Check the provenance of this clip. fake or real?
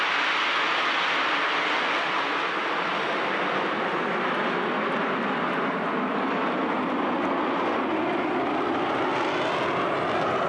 real